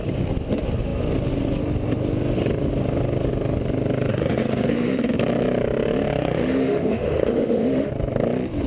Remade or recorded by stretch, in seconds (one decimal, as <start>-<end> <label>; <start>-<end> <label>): 0.0-4.1 recorded; 4.1-5.1 remade; 5.1-6.2 recorded; 6.2-7.9 remade; 7.9-8.7 recorded